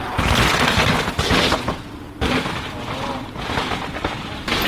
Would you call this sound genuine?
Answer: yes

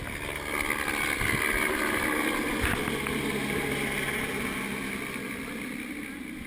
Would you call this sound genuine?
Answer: yes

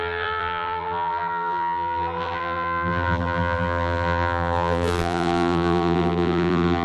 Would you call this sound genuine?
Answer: no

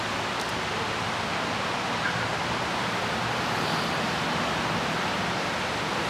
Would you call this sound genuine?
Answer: yes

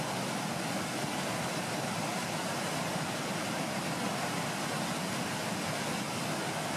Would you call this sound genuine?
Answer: yes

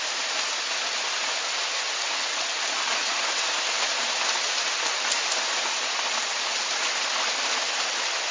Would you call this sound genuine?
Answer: yes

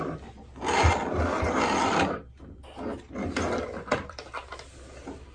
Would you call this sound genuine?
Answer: yes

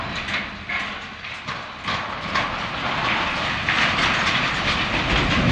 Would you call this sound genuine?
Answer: yes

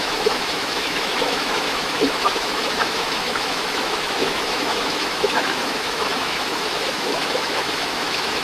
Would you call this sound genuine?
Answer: no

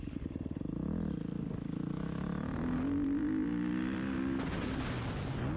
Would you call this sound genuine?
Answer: yes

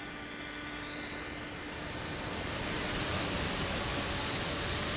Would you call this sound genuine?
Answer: yes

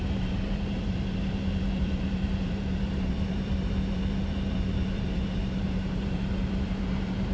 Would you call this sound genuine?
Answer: no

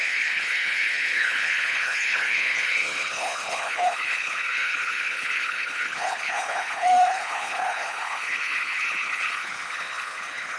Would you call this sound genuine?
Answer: no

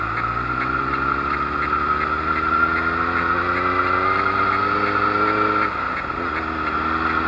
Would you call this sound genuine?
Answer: yes